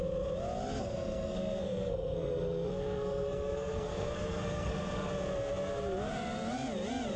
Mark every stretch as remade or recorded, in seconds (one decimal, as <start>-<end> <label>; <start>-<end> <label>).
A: 0.0-0.8 recorded; 0.8-5.1 remade; 5.1-7.2 recorded